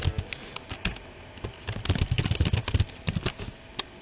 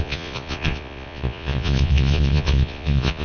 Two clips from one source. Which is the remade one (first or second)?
second